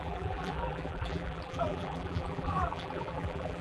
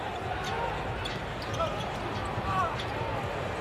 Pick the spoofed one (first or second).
first